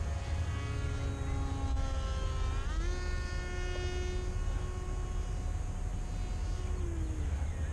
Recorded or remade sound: recorded